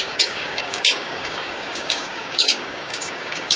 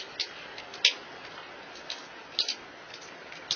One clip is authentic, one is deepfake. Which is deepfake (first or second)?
first